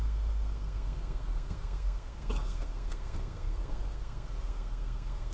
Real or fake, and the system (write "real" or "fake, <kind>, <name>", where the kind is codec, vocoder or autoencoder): fake, codec, SNAC